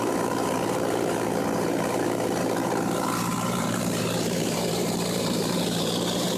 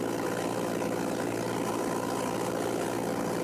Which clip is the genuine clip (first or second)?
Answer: second